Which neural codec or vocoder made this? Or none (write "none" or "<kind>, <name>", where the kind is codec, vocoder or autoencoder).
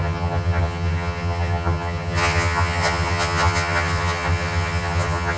vocoder, HiFi-GAN